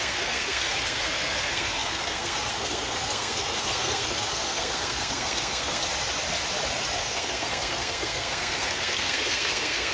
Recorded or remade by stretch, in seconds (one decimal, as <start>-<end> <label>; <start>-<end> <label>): 0.0-5.8 remade; 5.8-7.0 recorded; 7.0-9.9 remade